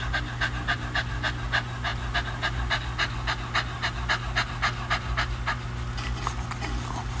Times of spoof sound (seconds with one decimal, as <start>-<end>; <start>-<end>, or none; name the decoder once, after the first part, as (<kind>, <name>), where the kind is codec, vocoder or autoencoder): none